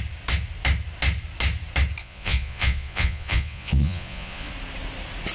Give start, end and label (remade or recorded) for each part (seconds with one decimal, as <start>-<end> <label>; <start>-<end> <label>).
0.0-2.0 recorded; 2.0-4.5 remade; 4.5-5.3 recorded